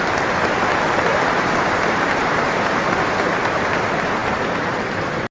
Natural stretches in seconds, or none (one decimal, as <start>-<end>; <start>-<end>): 0.0-1.1; 3.4-4.2